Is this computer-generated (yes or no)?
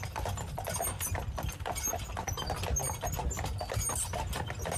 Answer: no